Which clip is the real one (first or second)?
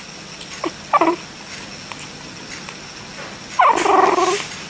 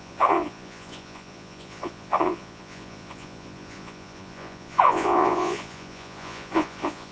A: first